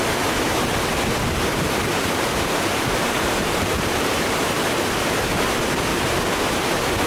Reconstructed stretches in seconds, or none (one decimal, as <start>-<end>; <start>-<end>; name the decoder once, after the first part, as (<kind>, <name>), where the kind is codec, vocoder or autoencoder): 0.9-5.2 (vocoder, BigVGAN v2); 5.9-6.4